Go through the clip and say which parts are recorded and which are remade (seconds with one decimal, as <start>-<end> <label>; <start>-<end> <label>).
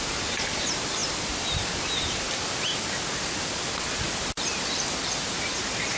0.0-6.0 recorded